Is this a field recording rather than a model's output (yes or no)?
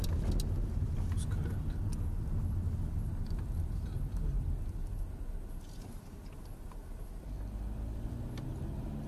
yes